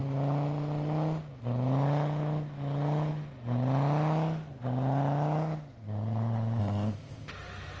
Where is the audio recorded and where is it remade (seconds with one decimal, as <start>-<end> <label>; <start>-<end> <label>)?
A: 0.0-6.6 recorded; 6.6-7.3 remade; 7.3-7.8 recorded